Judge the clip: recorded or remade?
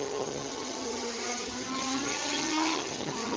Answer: remade